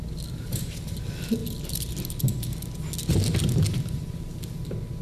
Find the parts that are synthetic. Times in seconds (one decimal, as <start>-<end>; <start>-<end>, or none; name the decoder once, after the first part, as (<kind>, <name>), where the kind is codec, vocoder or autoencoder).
none